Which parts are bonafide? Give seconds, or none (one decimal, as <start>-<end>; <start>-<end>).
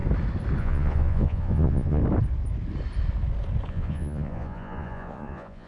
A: 0.0-0.6; 2.0-3.7